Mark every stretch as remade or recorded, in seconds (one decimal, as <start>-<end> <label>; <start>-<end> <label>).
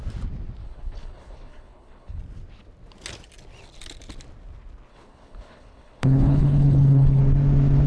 0.0-0.6 recorded; 0.6-2.2 remade; 2.2-4.9 recorded; 4.9-7.2 remade; 7.2-7.9 recorded